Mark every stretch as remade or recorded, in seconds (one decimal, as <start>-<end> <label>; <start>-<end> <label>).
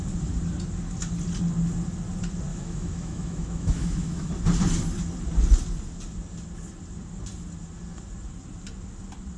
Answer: 0.0-2.5 recorded; 2.5-4.3 remade; 4.3-9.4 recorded